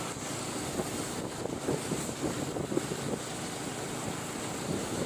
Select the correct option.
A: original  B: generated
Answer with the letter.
A